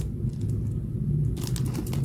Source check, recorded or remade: recorded